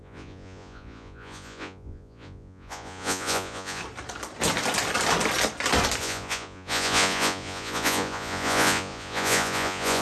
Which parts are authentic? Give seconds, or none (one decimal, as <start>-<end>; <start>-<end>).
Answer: 3.8-6.0